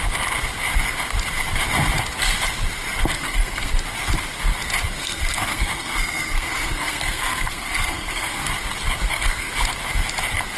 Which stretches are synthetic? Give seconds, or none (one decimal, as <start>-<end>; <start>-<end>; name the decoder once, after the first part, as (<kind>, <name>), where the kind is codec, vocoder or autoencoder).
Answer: 3.1-3.7 (codec, SNAC); 5.0-8.5; 9.0-9.5